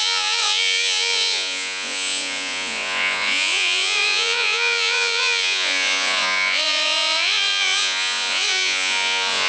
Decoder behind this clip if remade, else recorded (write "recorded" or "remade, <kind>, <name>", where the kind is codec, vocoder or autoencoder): remade, vocoder, Vocos